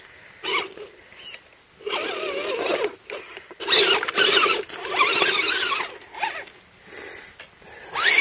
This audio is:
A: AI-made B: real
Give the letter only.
B